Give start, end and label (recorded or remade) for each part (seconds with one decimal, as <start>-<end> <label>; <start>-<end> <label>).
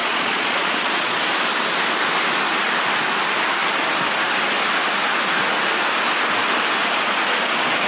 0.0-1.2 remade; 1.2-7.9 recorded